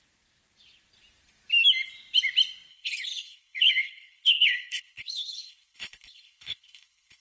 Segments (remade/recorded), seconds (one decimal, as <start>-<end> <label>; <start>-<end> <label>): 0.0-2.7 recorded; 2.7-7.2 remade